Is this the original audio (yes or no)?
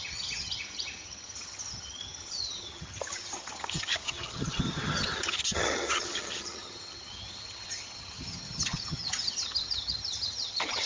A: no